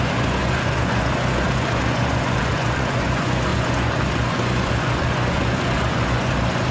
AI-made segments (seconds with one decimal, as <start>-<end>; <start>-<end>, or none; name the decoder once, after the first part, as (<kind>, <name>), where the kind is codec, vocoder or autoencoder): 0.0-6.7 (vocoder, Vocos)